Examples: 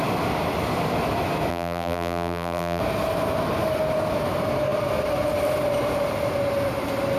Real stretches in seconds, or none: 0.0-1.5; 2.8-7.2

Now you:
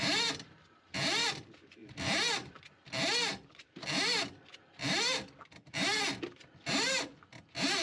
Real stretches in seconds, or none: 0.0-7.8

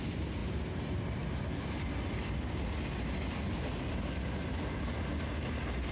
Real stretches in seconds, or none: 0.0-5.9

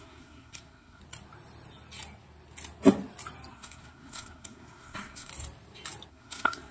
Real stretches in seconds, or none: 1.0-3.5; 5.3-6.1

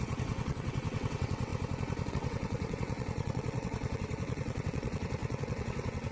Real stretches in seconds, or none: 1.5-2.1

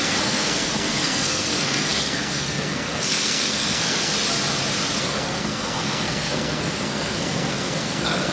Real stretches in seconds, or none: 4.1-5.0

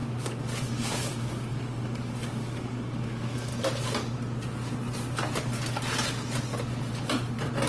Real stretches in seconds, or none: 3.5-7.7

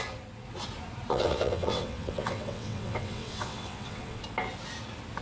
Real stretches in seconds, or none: 0.0-1.1; 4.2-5.2